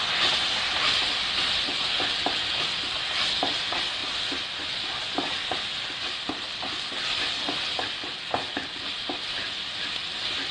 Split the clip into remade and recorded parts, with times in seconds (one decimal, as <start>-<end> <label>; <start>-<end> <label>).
0.0-4.0 recorded; 4.0-5.6 remade; 5.6-10.5 recorded